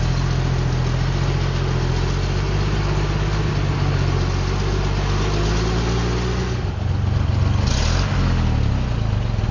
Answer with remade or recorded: recorded